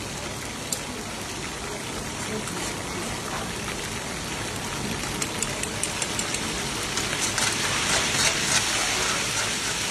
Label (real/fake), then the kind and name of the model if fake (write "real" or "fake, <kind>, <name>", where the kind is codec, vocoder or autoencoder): real